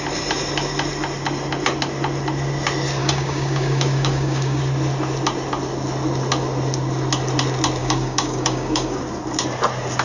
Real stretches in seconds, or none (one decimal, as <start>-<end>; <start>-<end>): 0.0-3.0; 4.6-7.8; 9.0-10.0